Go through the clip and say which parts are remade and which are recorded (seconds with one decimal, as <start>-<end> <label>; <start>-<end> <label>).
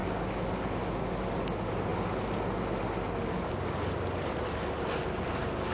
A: 0.0-0.5 remade; 0.5-5.7 recorded